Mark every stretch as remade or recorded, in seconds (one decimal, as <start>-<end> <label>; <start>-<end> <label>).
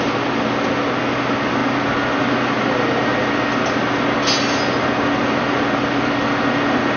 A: 0.0-7.0 recorded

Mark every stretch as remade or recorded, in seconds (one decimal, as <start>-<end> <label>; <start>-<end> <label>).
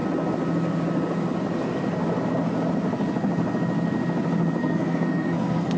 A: 0.0-4.6 recorded; 4.6-5.8 remade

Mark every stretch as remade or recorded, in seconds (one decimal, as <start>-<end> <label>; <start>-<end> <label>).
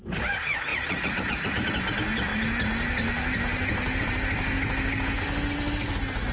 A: 0.0-0.7 recorded; 0.7-1.7 remade; 1.7-6.3 recorded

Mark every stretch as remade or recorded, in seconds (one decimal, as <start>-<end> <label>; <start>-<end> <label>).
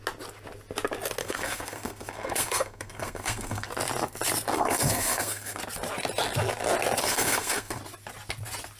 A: 0.0-1.2 recorded; 1.2-3.7 remade; 3.7-4.5 recorded; 4.5-5.6 remade; 5.6-7.0 recorded; 7.0-7.8 remade; 7.8-8.8 recorded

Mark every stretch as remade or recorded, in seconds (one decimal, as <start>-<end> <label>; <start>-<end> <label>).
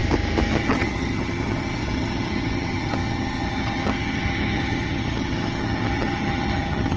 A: 0.0-0.5 recorded; 0.5-7.0 remade